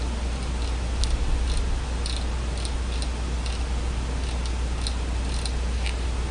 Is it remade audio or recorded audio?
recorded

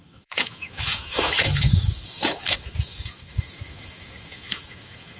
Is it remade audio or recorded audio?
remade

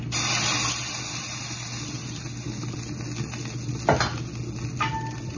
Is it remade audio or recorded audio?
recorded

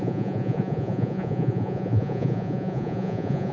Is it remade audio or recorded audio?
remade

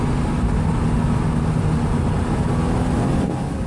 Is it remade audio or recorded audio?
recorded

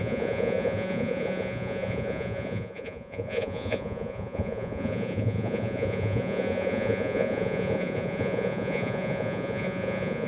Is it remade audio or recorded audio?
remade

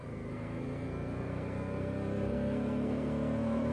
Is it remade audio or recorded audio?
remade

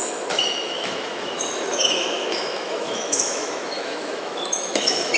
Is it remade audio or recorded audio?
remade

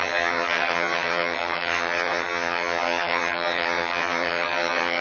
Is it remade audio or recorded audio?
remade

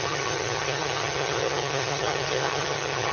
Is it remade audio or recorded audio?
remade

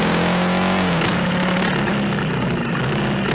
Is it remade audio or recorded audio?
recorded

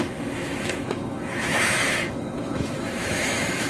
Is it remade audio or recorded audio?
remade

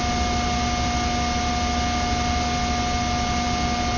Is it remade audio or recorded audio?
recorded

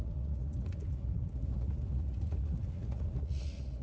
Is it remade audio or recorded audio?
remade